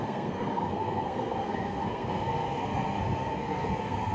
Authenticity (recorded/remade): remade